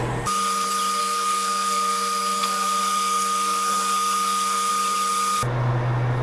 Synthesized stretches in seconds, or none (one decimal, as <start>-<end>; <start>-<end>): 1.0-4.7